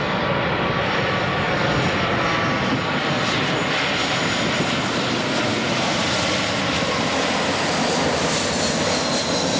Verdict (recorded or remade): recorded